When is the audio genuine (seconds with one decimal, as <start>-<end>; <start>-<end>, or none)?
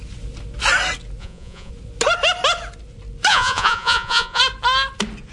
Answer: 0.0-1.2; 1.7-3.3; 4.4-5.3